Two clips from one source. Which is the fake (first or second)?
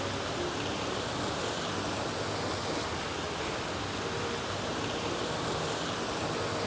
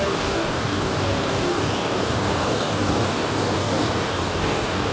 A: second